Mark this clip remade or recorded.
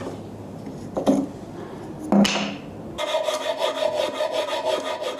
recorded